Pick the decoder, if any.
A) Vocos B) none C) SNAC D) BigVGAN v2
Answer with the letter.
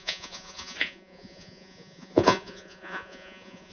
A